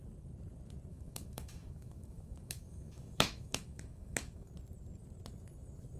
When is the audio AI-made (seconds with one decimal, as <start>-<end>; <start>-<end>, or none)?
0.9-4.5